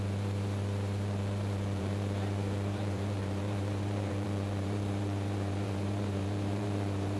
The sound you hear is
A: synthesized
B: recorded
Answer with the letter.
A